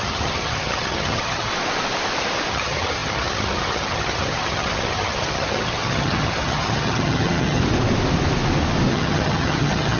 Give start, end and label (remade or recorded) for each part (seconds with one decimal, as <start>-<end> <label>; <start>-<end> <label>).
0.0-1.5 remade; 1.5-2.5 recorded; 2.5-7.6 remade; 7.6-8.9 recorded; 8.9-10.0 remade

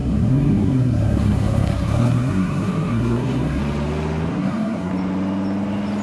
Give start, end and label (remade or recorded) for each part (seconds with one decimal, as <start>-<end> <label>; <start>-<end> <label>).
0.0-3.6 remade; 3.6-4.3 recorded; 4.3-4.9 remade; 4.9-6.0 recorded

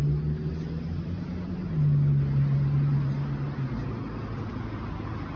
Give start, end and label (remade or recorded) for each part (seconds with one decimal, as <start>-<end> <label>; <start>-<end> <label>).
0.0-5.4 recorded

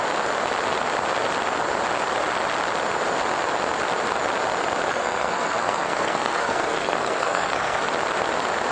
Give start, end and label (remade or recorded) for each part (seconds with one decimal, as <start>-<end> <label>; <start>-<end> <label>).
0.0-4.9 recorded; 4.9-7.8 remade; 7.8-8.7 recorded

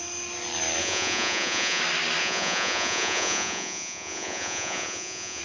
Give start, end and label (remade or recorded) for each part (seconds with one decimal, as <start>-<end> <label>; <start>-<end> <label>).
0.0-0.8 recorded; 0.8-1.8 remade; 1.8-2.2 recorded; 2.2-5.4 remade

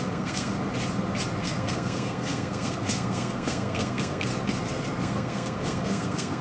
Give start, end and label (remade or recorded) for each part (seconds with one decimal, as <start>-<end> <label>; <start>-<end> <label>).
0.0-0.5 remade; 0.5-1.4 recorded; 1.4-4.3 remade; 4.3-5.0 recorded; 5.0-6.4 remade